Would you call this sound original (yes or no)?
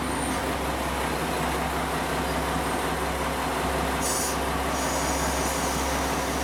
yes